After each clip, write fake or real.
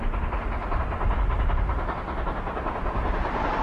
real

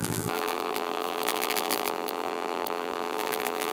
fake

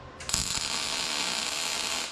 real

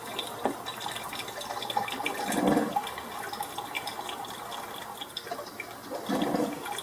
real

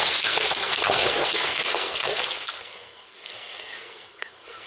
fake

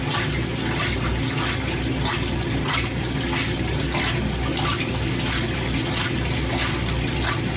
real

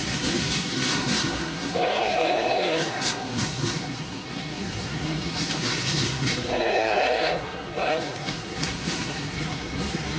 fake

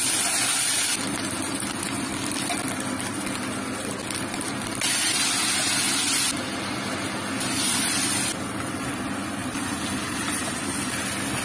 real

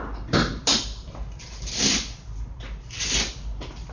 real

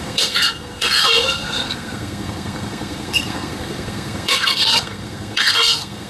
fake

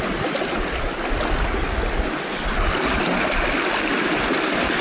real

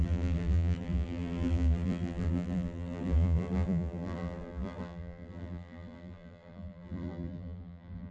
fake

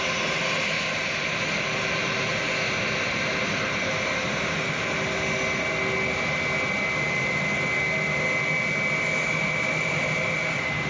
real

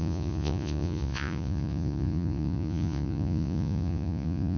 fake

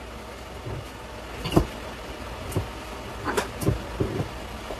real